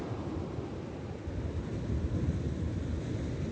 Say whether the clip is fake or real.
real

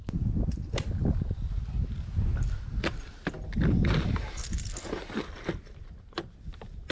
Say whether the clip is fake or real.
real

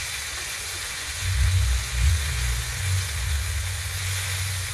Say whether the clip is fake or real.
fake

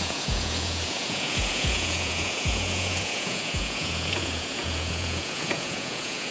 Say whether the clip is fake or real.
fake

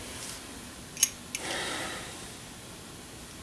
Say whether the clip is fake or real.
real